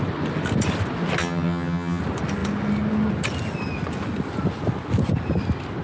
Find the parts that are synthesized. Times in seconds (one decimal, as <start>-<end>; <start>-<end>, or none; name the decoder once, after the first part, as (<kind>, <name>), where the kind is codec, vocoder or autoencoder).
1.2-2.0 (vocoder, HiFi-GAN)